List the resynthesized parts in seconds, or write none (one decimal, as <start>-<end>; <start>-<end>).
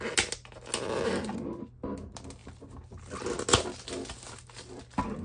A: none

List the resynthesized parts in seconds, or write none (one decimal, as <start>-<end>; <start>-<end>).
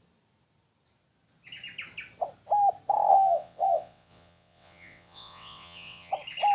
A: 3.1-6.1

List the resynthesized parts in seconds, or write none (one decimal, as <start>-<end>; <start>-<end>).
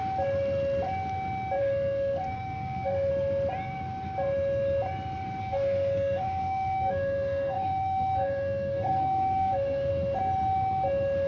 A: 1.6-3.1; 5.4-9.9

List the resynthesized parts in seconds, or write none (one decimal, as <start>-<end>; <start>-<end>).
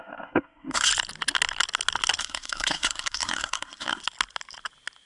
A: 0.0-0.9; 2.2-4.0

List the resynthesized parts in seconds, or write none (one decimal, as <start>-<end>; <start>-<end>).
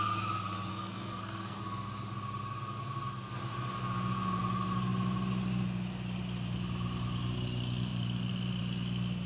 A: 0.7-1.6